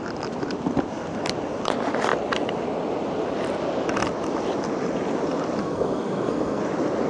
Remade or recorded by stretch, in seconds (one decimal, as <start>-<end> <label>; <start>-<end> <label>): 0.0-5.6 recorded; 5.6-6.6 remade; 6.6-7.1 recorded